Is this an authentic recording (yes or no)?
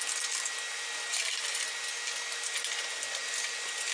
yes